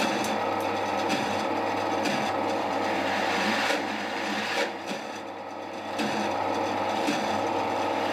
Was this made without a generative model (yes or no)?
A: no